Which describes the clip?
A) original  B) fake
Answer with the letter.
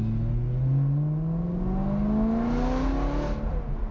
A